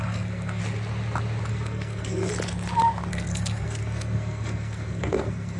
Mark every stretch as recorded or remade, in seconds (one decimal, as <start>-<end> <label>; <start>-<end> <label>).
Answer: 0.0-0.6 remade; 0.6-1.5 recorded; 1.5-2.3 remade; 2.3-3.1 recorded; 3.1-5.6 remade